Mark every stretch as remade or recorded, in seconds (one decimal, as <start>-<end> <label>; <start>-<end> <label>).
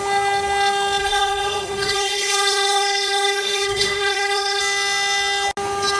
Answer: 0.0-1.0 recorded; 1.0-4.6 remade; 4.6-6.0 recorded